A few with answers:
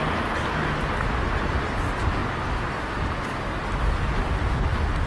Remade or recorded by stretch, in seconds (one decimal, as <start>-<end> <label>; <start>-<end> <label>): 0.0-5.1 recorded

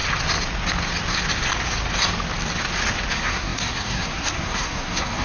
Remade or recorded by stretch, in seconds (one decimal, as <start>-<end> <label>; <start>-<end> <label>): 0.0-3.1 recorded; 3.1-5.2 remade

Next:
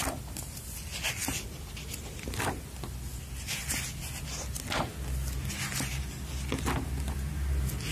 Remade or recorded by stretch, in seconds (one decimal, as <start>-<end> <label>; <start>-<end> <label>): 0.0-7.9 recorded

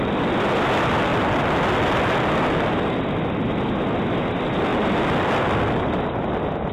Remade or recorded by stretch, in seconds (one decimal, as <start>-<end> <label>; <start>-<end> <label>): 0.0-4.7 recorded; 4.7-5.4 remade; 5.4-6.7 recorded

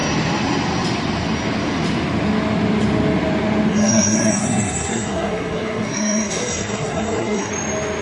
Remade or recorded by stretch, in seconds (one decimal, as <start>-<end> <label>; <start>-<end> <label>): 0.0-3.7 recorded; 3.7-7.5 remade; 7.5-8.0 recorded

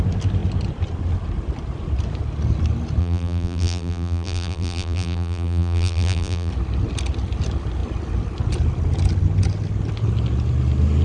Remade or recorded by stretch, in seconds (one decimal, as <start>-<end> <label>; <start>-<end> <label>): 0.0-3.0 recorded; 3.0-6.5 remade; 6.5-11.0 recorded